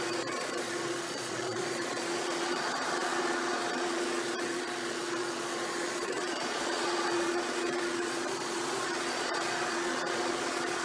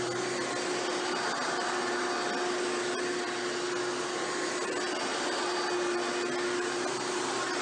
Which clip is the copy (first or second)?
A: first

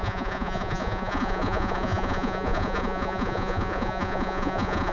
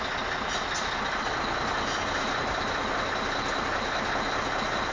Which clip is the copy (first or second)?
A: first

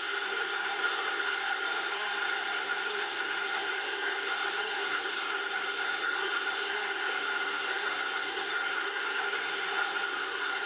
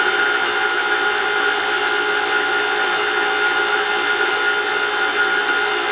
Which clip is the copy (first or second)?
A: first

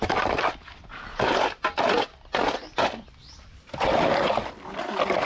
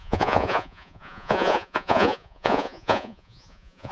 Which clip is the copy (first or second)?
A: second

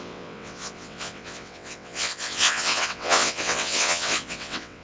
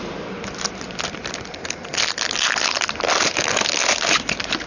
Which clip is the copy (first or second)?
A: first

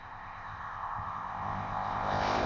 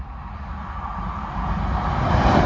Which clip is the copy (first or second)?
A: first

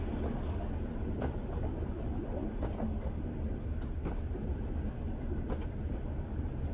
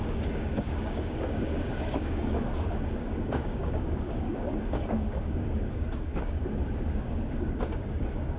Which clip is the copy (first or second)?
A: second